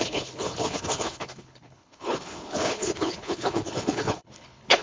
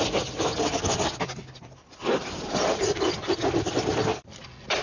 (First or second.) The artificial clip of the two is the first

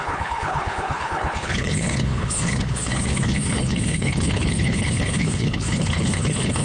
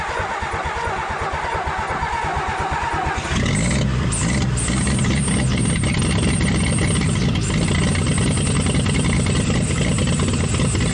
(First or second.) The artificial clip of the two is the first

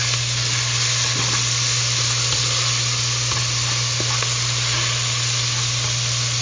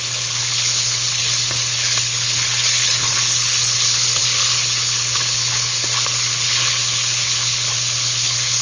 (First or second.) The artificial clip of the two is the second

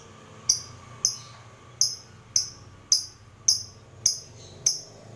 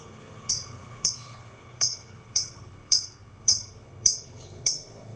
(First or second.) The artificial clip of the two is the second